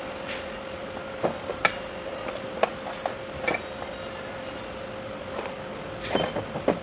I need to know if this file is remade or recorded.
recorded